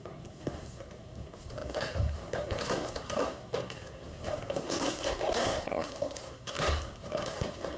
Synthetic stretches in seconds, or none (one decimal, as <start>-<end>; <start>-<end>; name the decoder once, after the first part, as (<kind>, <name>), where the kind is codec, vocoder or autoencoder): 0.0-7.8 (codec, SNAC)